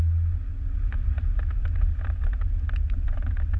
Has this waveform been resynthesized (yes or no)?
no